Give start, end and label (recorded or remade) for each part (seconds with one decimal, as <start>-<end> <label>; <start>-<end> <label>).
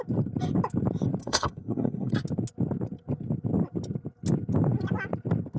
0.0-1.2 recorded; 1.2-2.1 remade; 2.1-5.6 recorded